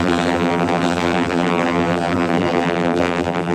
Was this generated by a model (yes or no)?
yes